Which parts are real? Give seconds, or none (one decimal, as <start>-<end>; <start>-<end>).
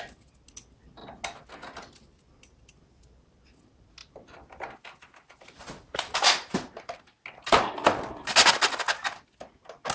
0.0-4.0; 7.0-9.9